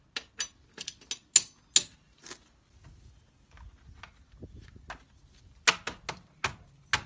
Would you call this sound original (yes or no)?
yes